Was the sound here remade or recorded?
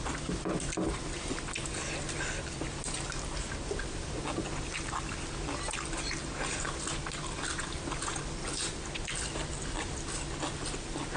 recorded